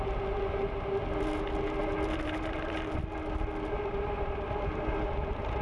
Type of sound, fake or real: real